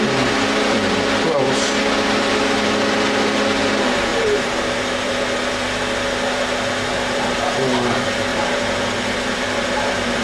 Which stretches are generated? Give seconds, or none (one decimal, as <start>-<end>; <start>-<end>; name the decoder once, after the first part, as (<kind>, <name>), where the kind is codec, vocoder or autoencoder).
4.1-5.1 (vocoder, BigVGAN v2); 8.3-10.2